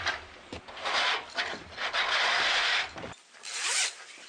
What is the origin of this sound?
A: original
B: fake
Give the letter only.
B